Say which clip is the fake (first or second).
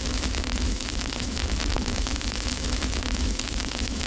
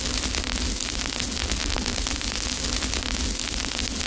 first